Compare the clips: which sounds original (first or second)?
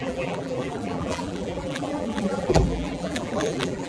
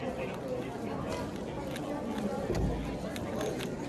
second